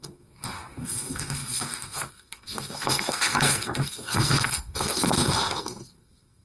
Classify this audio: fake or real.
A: fake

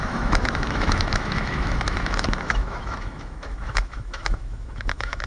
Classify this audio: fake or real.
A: fake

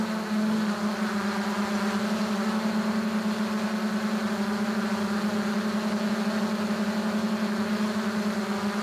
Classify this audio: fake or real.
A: real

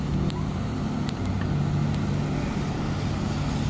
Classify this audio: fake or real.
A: real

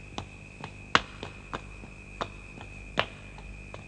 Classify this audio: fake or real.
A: real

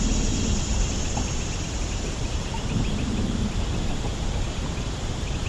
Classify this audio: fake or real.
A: real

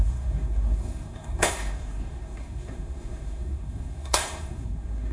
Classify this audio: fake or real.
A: fake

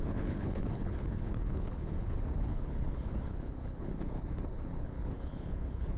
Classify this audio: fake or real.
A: fake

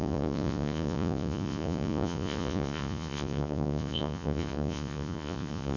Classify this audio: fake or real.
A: fake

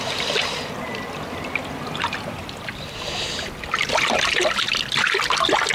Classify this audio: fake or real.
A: real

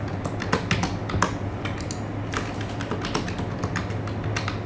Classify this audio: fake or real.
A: real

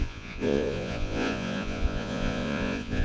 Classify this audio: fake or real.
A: fake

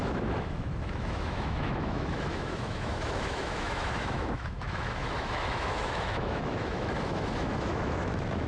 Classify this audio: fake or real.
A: fake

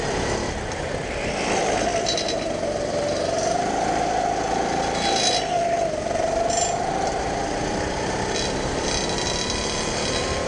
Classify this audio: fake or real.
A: real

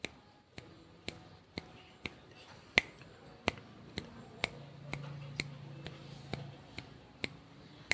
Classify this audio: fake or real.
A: real